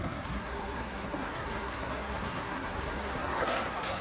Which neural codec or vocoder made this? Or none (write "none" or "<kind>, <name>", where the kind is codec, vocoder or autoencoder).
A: codec, SNAC